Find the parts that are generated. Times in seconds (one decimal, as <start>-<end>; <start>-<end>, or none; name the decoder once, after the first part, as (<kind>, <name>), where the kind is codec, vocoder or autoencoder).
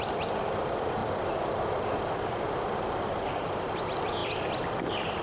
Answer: none